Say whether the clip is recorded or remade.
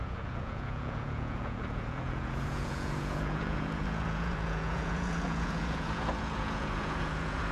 remade